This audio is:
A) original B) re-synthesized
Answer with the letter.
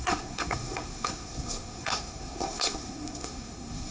B